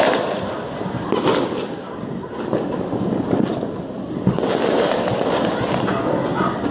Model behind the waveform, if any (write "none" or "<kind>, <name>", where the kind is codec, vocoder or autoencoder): none